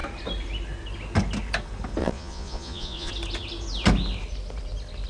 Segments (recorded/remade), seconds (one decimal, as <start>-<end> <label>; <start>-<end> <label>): 0.0-2.0 recorded; 2.0-3.1 remade; 3.1-5.1 recorded